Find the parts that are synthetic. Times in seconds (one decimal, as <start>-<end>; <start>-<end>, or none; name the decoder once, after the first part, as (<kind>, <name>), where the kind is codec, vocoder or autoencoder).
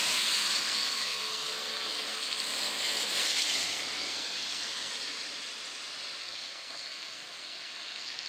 0.0-4.9 (codec, SNAC); 6.2-8.3